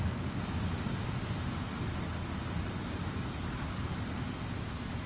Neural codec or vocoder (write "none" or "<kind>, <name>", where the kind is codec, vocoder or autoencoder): none